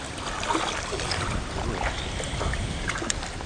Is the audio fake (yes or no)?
no